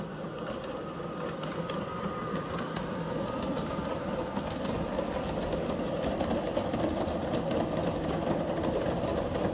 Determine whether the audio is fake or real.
real